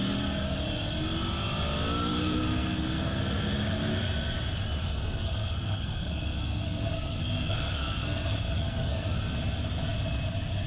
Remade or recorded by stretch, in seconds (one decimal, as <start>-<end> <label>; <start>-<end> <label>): 0.0-2.1 recorded; 2.1-3.2 remade; 3.2-4.8 recorded; 4.8-9.2 remade; 9.2-10.7 recorded